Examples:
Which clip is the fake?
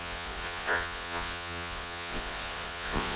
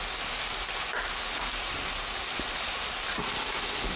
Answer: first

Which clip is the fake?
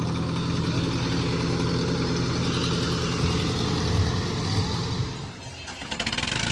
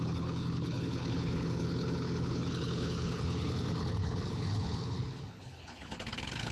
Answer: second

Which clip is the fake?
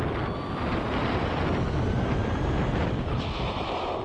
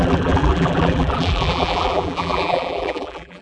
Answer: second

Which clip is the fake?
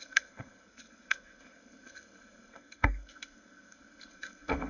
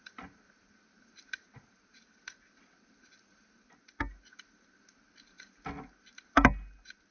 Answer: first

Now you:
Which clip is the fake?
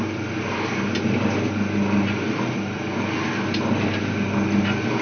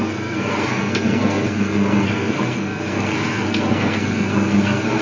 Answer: second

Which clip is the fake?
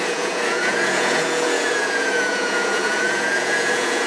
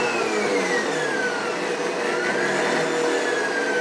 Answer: first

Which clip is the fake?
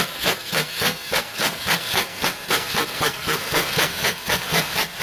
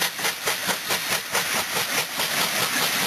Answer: first